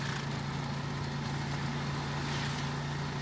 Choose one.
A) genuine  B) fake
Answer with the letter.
A